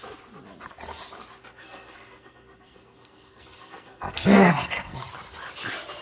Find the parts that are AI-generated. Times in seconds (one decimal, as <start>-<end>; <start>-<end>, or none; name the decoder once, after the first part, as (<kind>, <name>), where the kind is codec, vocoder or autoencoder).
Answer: 1.4-5.0 (codec, SNAC)

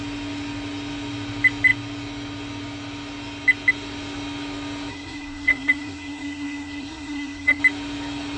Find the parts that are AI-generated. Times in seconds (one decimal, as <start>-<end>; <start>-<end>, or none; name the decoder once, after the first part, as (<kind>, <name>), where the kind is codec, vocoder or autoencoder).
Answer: 4.9-7.6 (codec, SNAC)

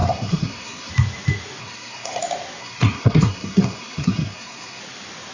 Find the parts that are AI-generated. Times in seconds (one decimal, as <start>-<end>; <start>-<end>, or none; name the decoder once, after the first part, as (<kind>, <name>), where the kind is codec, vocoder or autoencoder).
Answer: 0.0-0.9 (codec, SNAC); 1.6-2.2; 2.6-4.8

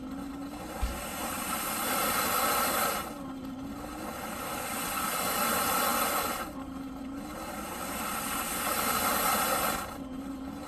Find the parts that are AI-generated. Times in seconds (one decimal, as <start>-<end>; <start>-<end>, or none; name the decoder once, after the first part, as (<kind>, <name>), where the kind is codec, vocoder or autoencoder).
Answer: none

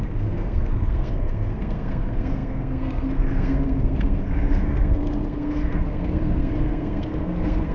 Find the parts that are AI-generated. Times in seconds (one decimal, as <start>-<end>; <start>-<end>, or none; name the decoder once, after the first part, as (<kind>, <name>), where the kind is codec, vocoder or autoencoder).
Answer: 0.0-7.7 (codec, SNAC)

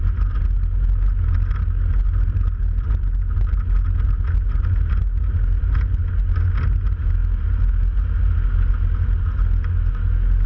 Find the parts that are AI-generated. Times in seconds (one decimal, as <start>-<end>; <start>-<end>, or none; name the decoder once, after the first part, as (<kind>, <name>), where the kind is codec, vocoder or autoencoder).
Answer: none

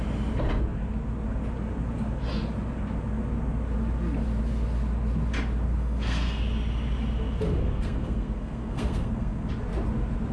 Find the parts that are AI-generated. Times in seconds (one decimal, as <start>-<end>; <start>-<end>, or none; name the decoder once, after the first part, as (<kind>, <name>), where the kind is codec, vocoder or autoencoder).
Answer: 5.7-6.4 (codec, SNAC); 7.6-9.5